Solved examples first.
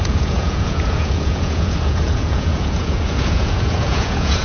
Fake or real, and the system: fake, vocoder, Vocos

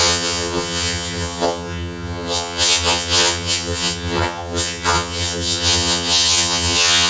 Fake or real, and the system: fake, vocoder, HiFi-GAN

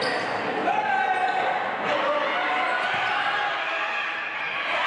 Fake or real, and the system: real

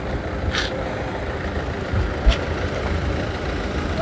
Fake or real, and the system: real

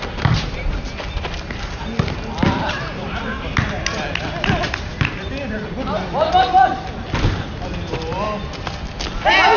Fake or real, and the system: real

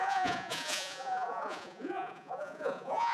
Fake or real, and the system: fake, vocoder, Vocos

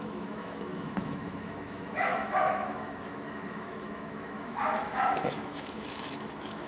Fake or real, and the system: fake, autoencoder, DAC-VAE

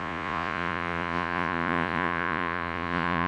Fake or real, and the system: fake, vocoder, Vocos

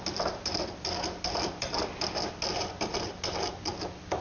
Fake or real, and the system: real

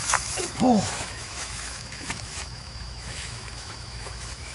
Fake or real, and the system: fake, autoencoder, DAC-VAE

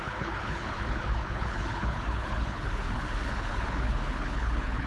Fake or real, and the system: fake, codec, HILCodec